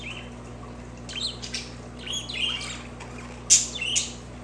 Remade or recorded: recorded